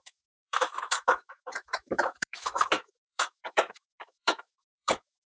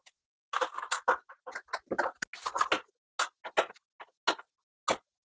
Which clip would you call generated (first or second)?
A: first